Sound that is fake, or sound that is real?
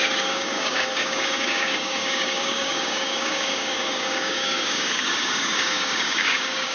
fake